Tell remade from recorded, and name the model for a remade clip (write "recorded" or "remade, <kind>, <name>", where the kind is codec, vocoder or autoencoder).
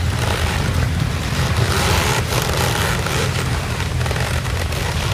remade, vocoder, BigVGAN v2